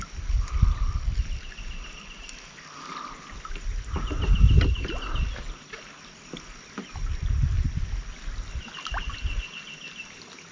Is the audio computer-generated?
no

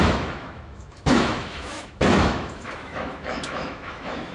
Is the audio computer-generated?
yes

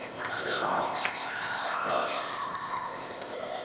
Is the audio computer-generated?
yes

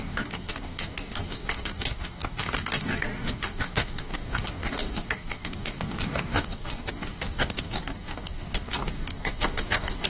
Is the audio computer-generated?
yes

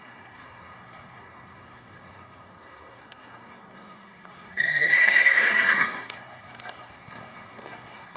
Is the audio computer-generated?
yes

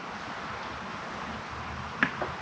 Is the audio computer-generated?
no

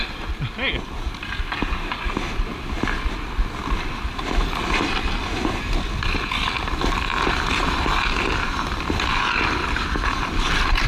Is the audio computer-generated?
no